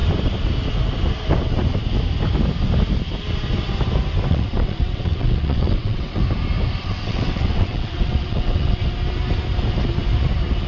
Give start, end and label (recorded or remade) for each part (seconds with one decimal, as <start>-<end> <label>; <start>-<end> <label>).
0.0-4.3 recorded; 4.3-6.2 remade; 6.2-6.8 recorded; 6.8-8.8 remade; 8.8-10.7 recorded